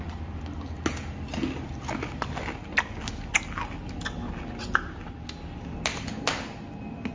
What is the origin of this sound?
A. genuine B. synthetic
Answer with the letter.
A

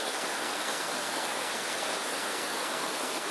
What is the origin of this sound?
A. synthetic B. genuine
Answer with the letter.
A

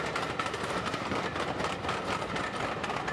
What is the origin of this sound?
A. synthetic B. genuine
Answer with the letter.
B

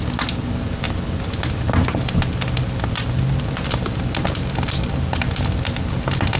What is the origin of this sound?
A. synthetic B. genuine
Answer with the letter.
B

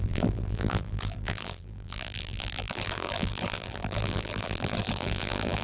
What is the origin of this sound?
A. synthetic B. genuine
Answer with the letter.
A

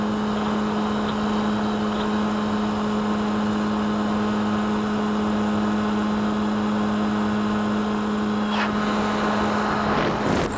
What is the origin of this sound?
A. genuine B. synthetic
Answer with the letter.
A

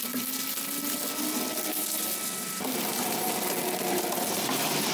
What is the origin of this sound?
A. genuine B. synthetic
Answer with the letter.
A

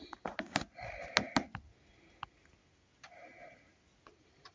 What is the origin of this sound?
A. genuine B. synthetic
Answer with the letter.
A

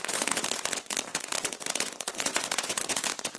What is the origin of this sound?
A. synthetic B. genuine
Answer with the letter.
A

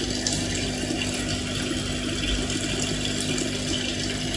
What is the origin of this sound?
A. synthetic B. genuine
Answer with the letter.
B